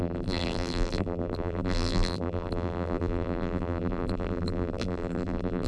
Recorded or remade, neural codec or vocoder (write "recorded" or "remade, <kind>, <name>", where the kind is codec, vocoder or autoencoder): remade, vocoder, BigVGAN v2